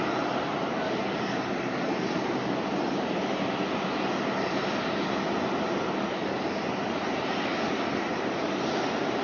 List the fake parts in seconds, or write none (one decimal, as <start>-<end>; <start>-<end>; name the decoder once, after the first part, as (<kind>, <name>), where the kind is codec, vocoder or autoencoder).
none